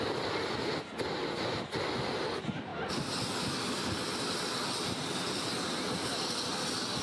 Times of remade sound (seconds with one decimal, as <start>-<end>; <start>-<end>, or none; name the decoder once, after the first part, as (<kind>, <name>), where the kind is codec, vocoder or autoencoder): 2.7-7.0 (vocoder, BigVGAN v2)